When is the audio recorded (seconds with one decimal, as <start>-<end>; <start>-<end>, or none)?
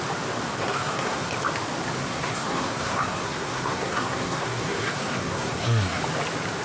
0.0-0.6; 1.3-2.0; 6.0-6.6